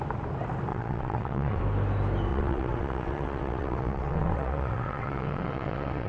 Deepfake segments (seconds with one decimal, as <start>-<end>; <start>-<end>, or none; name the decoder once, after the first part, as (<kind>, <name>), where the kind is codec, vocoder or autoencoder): 0.7-1.6 (vocoder, WaveNeXt); 2.3-6.1